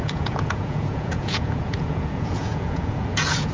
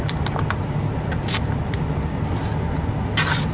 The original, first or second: second